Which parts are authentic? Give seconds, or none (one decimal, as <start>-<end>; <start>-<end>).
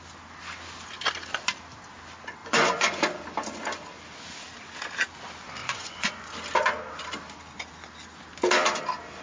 0.0-2.4; 3.0-5.6; 6.3-9.2